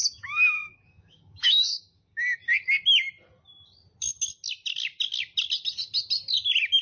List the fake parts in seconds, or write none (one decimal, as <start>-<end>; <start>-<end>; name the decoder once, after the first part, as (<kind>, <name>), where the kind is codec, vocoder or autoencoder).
0.0-2.5 (codec, DAC)